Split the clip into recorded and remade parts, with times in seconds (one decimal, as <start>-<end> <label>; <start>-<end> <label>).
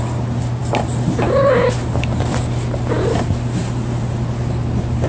0.0-5.1 recorded